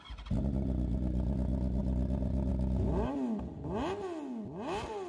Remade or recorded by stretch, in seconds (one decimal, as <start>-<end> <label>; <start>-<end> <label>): 0.0-1.8 recorded; 1.8-2.5 remade; 2.5-5.1 recorded